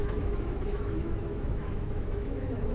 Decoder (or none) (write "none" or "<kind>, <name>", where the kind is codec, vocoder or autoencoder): autoencoder, DAC-VAE